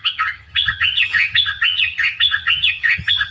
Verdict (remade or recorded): remade